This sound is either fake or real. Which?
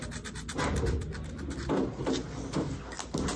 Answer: real